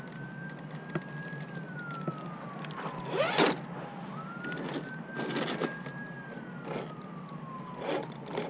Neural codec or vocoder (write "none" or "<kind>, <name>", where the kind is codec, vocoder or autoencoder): none